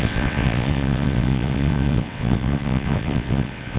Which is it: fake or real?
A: fake